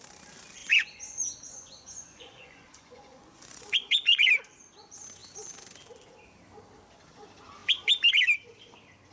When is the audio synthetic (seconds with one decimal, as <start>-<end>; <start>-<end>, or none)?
0.6-4.3